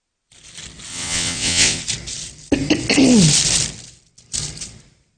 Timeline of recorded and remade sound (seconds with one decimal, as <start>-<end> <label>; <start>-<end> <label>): 0.0-0.9 recorded; 0.9-1.8 remade; 1.8-5.2 recorded